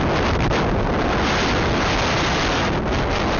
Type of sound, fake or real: real